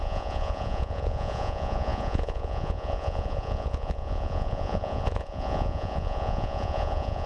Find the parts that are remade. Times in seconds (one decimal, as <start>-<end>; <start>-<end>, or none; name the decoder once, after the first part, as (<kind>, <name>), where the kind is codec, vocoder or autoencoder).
0.0-7.3 (vocoder, Vocos)